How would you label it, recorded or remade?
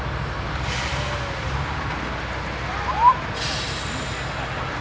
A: recorded